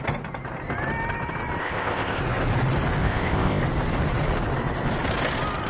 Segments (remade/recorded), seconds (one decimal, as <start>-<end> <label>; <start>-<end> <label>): 0.0-1.6 recorded; 1.6-2.2 remade; 2.2-3.0 recorded; 3.0-3.6 remade; 3.6-5.7 recorded